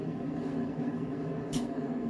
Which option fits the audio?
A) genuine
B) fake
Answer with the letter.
B